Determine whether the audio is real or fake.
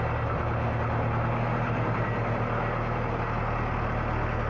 real